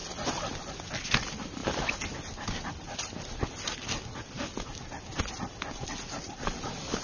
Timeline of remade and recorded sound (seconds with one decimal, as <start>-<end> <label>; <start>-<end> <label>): 0.0-7.0 recorded